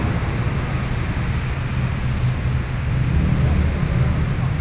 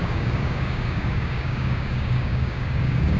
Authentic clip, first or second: first